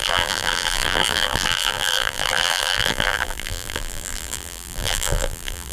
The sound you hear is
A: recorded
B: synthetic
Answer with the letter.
B